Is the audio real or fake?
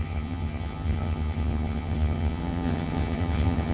fake